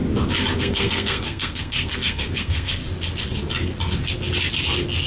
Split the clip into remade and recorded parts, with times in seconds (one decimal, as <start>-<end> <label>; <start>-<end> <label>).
0.0-0.6 recorded; 0.6-2.8 remade; 2.8-5.1 recorded